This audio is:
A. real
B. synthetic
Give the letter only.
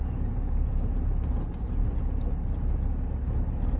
A